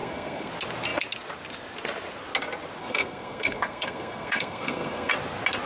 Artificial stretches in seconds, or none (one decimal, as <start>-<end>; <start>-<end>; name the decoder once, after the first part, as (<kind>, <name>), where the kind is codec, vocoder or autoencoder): 0.0-0.5 (codec, SNAC); 2.8-5.1